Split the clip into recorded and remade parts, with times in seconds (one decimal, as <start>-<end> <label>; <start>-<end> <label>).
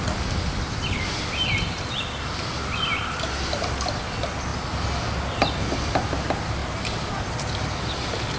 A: 0.0-6.6 recorded; 6.6-7.3 remade; 7.3-8.4 recorded